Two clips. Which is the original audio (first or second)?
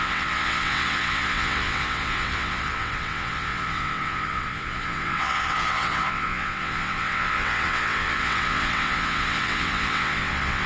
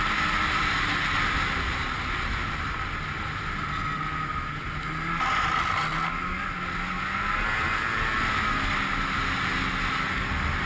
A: second